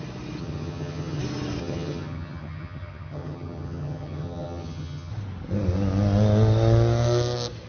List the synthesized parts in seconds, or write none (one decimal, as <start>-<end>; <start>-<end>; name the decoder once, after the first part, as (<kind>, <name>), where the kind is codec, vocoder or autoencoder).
0.4-1.2 (vocoder, HiFi-GAN); 1.6-5.1